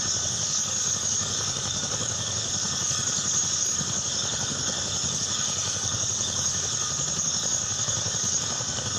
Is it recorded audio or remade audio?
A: remade